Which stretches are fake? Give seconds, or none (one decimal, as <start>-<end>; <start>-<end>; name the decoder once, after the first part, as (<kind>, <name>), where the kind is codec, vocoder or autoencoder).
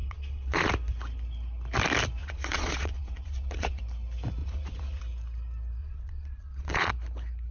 0.0-0.7 (vocoder, Vocos); 2.2-3.8; 4.4-5.0; 5.8-6.9